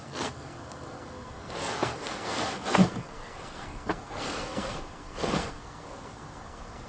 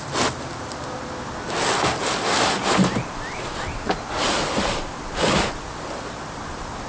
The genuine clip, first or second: second